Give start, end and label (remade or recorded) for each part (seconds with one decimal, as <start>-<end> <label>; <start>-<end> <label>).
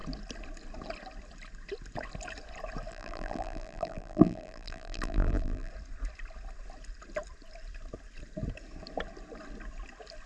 0.0-2.9 recorded; 2.9-5.7 remade; 5.7-10.3 recorded